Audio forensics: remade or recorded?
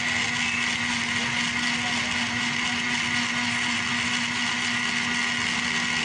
recorded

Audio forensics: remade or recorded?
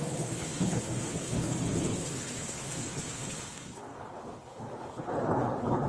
remade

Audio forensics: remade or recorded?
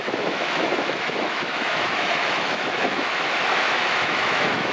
remade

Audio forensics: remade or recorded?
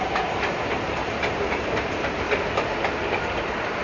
remade